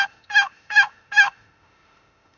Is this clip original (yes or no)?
no